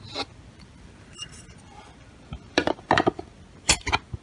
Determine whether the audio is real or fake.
fake